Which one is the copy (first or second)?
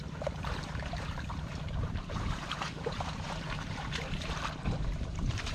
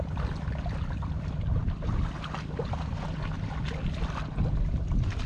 first